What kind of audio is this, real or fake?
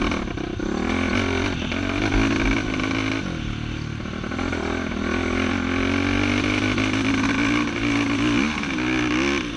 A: real